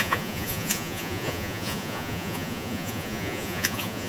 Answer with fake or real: fake